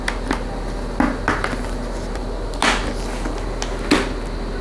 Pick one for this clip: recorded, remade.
recorded